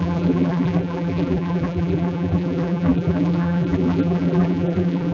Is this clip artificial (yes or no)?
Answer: yes